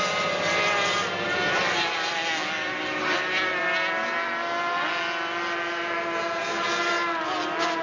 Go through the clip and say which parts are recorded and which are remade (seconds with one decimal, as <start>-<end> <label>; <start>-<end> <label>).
0.0-7.8 recorded